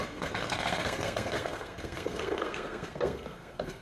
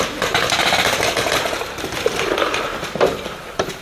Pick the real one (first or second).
second